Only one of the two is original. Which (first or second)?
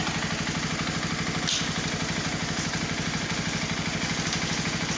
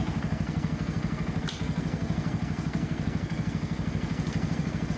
first